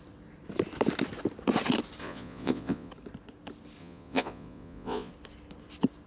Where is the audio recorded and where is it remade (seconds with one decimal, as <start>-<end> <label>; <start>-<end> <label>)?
0.0-2.0 recorded; 2.0-2.9 remade; 2.9-3.8 recorded; 3.8-5.1 remade; 5.1-6.1 recorded